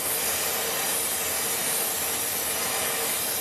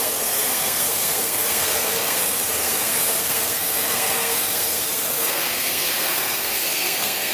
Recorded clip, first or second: first